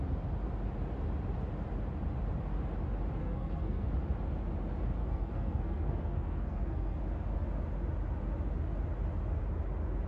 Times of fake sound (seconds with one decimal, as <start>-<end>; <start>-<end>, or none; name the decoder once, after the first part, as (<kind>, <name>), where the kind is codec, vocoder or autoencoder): 3.2-3.9 (codec, SNAC); 5.0-7.0